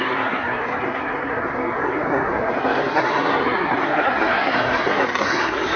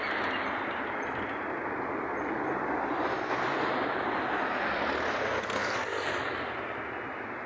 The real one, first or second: second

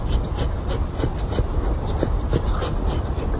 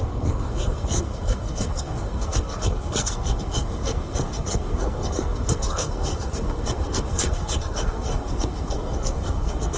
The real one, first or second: first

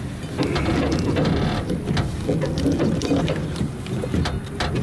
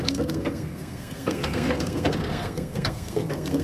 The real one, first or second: first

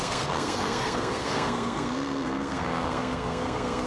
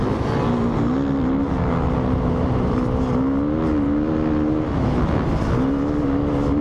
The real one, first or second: second